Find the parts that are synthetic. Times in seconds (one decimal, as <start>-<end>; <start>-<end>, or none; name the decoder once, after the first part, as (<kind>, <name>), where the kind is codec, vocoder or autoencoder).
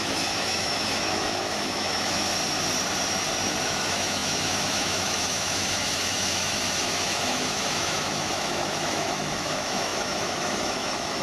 0.0-2.3 (autoencoder, DAC-VAE); 3.6-11.2